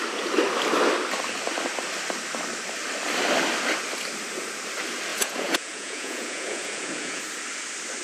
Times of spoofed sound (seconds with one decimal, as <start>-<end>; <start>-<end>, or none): 5.1-7.2